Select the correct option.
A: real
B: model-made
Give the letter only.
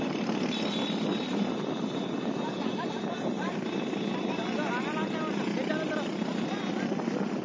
A